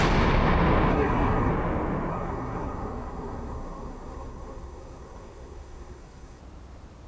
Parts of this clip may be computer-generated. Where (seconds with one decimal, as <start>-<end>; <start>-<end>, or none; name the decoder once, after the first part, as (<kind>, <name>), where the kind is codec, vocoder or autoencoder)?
0.9-1.5 (codec, SNAC); 2.1-6.4